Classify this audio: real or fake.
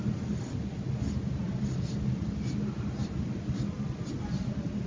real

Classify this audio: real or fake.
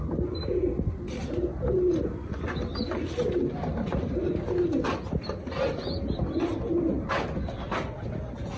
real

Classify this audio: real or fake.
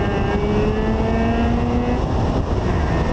real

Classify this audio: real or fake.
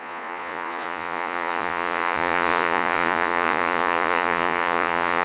fake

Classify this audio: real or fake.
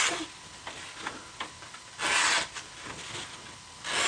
real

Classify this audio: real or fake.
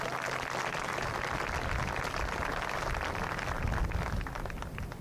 real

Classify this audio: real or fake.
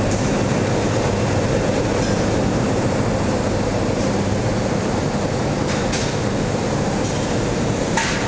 fake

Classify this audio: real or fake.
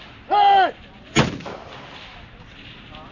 real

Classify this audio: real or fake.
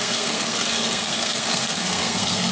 fake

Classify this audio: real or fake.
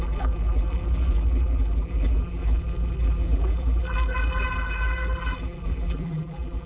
fake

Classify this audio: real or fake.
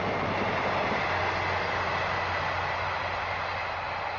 real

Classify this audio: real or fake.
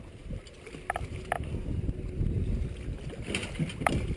real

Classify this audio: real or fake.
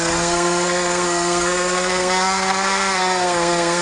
fake